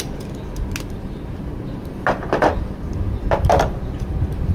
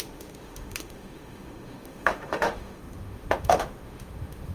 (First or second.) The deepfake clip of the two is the second